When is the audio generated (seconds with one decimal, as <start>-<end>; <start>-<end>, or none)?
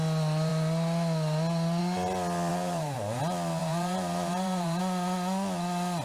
2.5-3.2; 3.6-4.8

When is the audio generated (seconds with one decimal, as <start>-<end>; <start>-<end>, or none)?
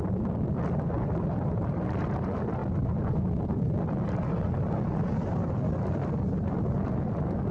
none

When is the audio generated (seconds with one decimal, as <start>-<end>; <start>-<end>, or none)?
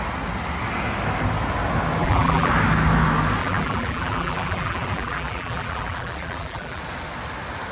2.0-2.5; 3.4-6.8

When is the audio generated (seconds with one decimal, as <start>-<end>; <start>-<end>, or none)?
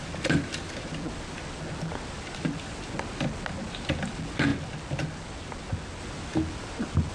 none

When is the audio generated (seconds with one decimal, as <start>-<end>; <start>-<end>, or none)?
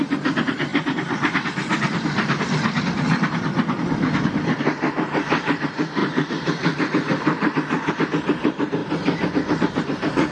0.0-0.7; 5.3-8.8; 9.6-10.3